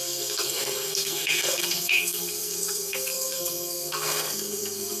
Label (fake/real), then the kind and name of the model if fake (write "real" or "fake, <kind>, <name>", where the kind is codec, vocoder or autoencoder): fake, codec, SNAC